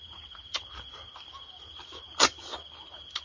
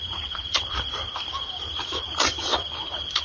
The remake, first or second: second